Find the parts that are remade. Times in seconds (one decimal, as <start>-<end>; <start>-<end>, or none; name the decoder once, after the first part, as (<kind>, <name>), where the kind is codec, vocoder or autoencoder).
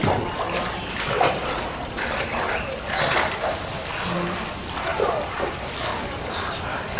0.0-3.6 (vocoder, BigVGAN v2); 4.9-5.7